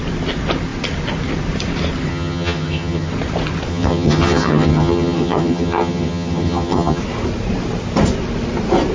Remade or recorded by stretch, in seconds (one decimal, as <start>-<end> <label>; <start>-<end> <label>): 0.0-2.1 recorded; 2.1-3.1 remade; 3.1-3.7 recorded; 3.7-7.0 remade; 7.0-8.9 recorded